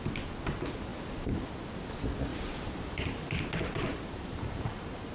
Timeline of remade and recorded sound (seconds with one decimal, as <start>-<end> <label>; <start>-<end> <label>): 0.0-0.9 recorded; 0.9-1.5 remade; 1.5-2.3 recorded; 2.3-3.3 remade; 3.3-3.9 recorded; 3.9-5.1 remade